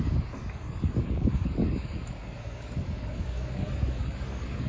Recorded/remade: remade